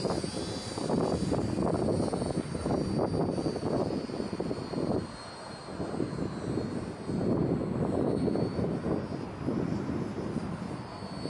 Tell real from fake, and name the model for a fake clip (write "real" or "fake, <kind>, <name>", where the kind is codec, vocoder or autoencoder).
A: real